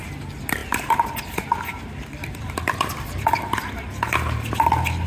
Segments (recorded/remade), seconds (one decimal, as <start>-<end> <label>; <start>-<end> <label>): 0.0-5.1 recorded